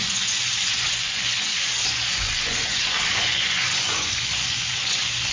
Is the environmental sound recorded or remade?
remade